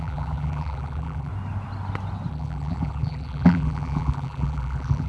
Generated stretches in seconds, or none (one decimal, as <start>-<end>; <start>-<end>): 0.0-1.3; 2.3-5.1